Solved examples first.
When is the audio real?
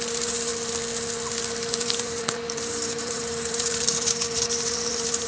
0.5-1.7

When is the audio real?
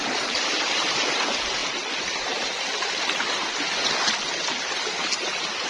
0.0-5.7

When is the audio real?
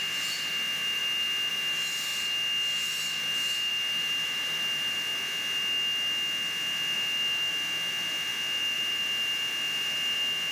1.0-1.5; 2.1-3.2; 5.1-6.7